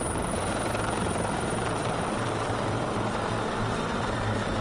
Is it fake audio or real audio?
fake